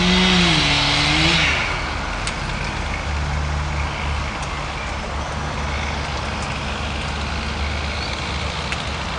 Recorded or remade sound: recorded